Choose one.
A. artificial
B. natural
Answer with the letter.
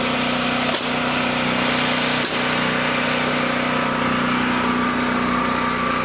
B